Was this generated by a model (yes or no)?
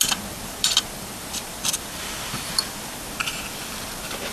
yes